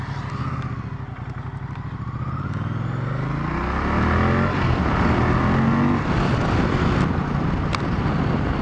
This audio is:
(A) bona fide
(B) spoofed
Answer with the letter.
A